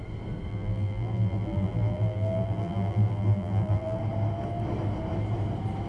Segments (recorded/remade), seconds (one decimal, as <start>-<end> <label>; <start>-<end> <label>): 0.0-0.5 recorded; 0.5-4.0 remade; 4.0-5.9 recorded